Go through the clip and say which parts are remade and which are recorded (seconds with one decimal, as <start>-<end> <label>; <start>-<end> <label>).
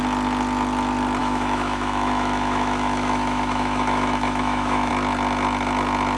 0.0-1.2 recorded; 1.2-4.9 remade; 4.9-6.2 recorded